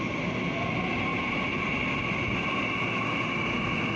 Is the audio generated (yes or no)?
no